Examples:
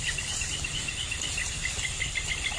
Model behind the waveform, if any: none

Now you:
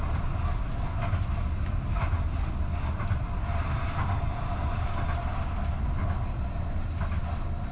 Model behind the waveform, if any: none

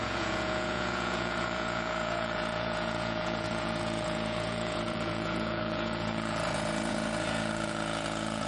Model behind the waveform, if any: vocoder, Vocos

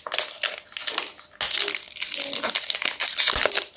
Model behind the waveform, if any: none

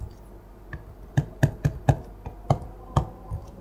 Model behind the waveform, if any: none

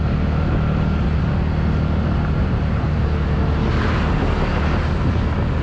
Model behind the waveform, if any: none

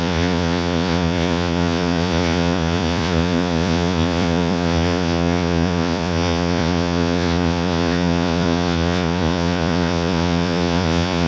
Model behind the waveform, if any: vocoder, Vocos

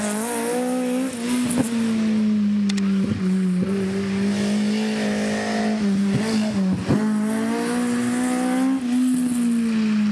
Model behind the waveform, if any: none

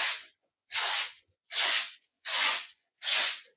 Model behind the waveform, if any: vocoder, Vocos